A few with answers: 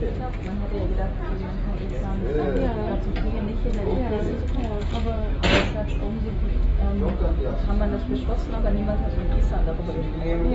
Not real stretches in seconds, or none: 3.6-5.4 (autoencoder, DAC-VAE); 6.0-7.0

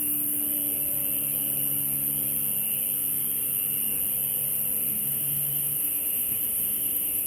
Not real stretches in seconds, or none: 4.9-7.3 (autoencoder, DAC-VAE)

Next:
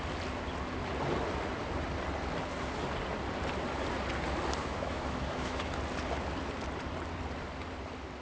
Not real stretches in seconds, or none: 4.6-5.7 (autoencoder, DAC-VAE)

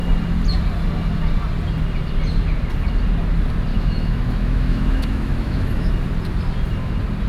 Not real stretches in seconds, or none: 3.7-5.9 (autoencoder, DAC-VAE)

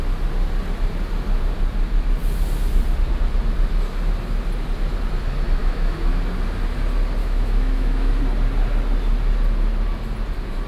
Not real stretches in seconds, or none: 5.6-6.2 (autoencoder, DAC-VAE); 7.2-8.1